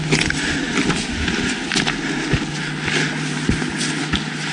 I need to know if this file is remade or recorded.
recorded